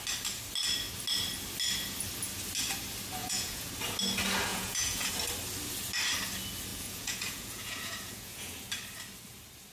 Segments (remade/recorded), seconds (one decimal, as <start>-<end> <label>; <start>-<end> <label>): 0.0-3.2 recorded; 3.2-3.7 remade; 3.7-4.5 recorded; 4.5-5.1 remade; 5.1-6.7 recorded; 6.7-8.6 remade; 8.6-9.7 recorded